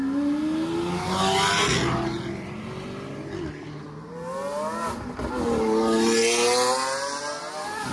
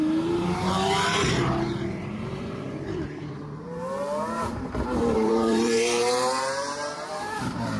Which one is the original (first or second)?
first